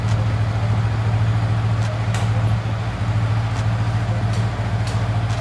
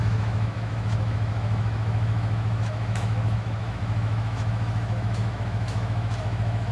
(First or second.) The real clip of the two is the first